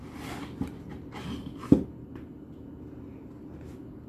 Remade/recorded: recorded